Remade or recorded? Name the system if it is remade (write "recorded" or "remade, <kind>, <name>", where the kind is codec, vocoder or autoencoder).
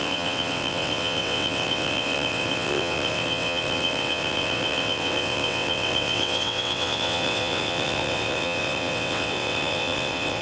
remade, vocoder, WaveNeXt